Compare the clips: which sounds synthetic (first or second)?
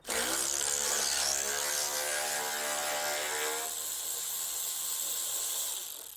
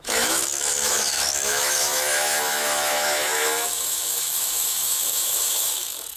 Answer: second